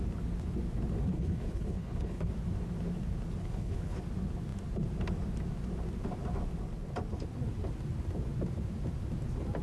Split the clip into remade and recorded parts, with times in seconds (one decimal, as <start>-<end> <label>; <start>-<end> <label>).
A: 0.0-1.1 recorded; 1.1-2.3 remade; 2.3-3.4 recorded; 3.4-4.0 remade; 4.0-9.6 recorded